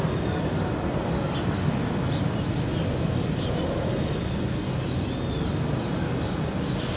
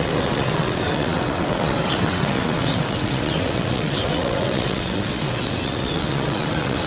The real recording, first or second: first